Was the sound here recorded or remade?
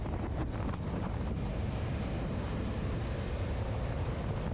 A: remade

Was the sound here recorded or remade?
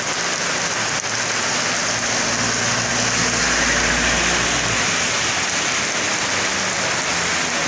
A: recorded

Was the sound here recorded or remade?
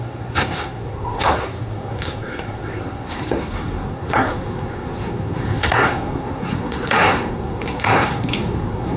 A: remade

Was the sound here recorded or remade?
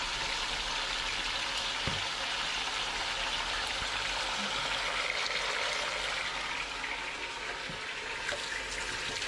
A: recorded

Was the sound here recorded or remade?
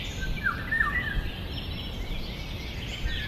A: recorded